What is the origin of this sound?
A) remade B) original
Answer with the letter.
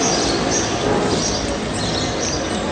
A